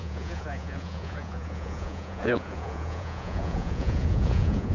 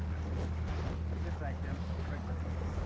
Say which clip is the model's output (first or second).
first